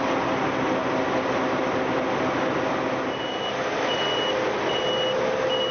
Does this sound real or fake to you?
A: real